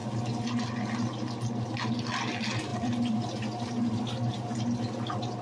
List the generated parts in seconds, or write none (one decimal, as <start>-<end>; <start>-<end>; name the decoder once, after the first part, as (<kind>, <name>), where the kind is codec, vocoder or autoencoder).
0.0-1.7 (vocoder, BigVGAN v2); 2.7-4.0